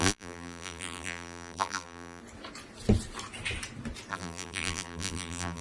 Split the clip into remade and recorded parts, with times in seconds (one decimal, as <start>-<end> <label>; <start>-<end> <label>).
0.0-2.2 remade; 2.2-4.1 recorded; 4.1-5.6 remade